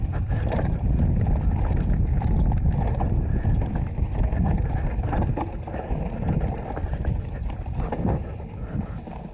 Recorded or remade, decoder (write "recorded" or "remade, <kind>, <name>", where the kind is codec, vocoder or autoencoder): recorded